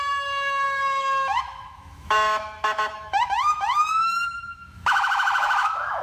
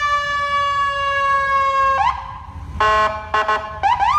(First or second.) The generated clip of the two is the first